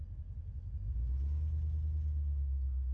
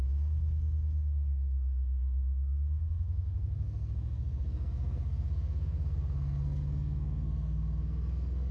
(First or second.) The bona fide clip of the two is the first